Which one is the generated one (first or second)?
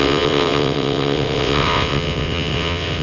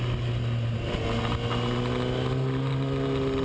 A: first